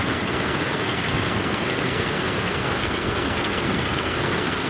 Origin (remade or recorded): remade